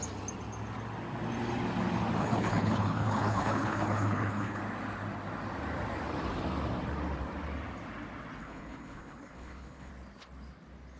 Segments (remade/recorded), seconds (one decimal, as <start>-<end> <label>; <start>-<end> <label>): 0.0-2.2 recorded; 2.2-4.6 remade; 4.6-8.4 recorded; 8.4-9.9 remade; 9.9-11.0 recorded